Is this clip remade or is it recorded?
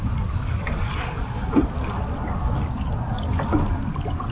remade